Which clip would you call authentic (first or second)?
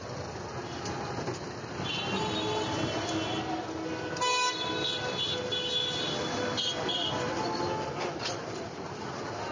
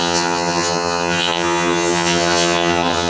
first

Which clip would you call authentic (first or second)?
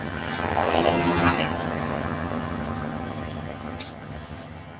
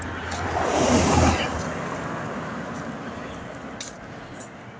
second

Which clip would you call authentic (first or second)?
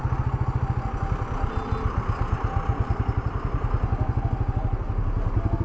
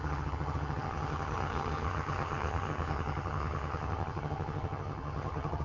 first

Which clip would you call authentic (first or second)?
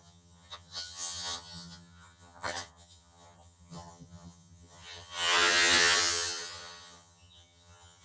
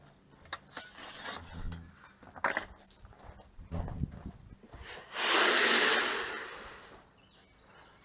second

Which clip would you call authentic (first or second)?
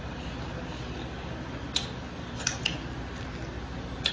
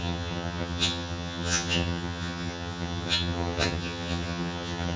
first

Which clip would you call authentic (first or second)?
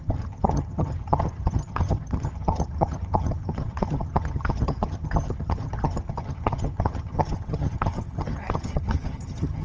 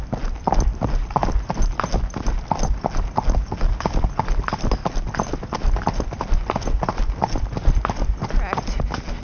second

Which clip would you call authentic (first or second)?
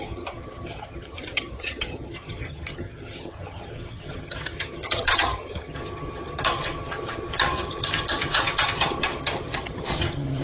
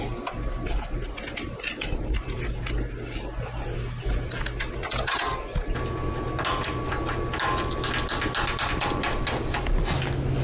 second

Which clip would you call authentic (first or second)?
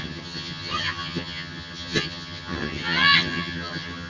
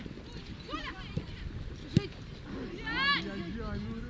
second